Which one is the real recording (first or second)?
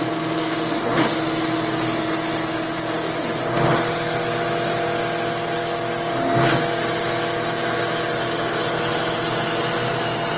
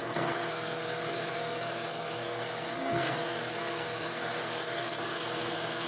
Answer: first